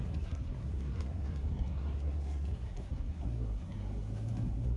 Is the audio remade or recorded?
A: remade